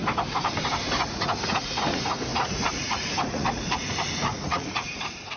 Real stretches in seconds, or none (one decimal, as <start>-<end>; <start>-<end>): 0.0-1.0